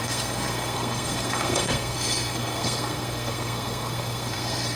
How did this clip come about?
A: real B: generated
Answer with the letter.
B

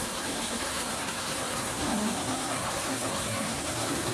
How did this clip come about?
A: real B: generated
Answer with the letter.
B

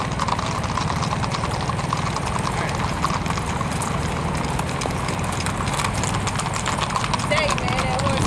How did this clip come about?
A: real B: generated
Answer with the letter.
A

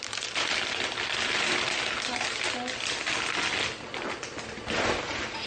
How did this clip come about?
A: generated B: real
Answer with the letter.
B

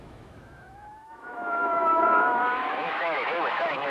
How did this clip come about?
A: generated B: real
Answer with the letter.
A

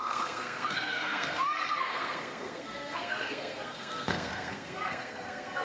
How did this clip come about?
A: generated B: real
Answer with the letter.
A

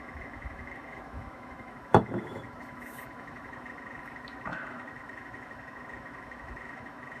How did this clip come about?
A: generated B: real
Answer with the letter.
A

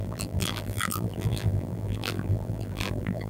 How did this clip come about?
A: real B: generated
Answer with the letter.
B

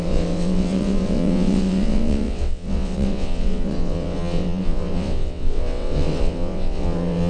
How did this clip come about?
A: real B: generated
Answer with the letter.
B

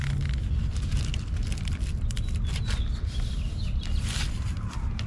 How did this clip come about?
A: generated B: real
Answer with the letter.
B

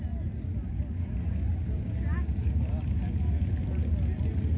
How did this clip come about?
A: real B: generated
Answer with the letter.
A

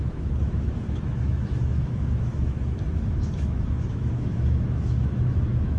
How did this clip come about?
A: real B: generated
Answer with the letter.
B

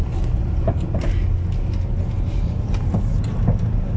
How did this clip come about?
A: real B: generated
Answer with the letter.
A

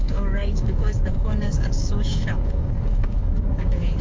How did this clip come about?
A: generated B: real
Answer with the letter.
A